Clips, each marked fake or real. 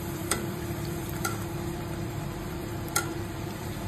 fake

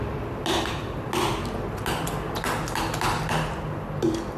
real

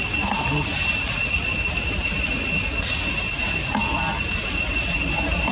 fake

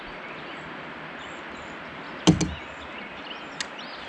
real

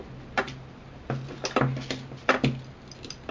real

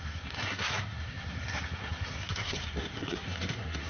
fake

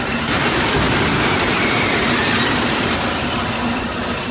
fake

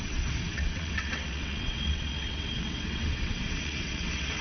fake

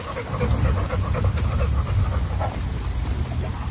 real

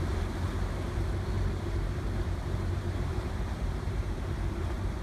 fake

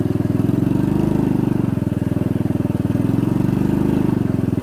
real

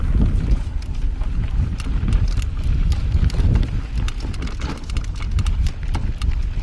real